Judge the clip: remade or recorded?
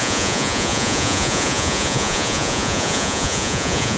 remade